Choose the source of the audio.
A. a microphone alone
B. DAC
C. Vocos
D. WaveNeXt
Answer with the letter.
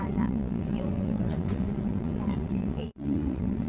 D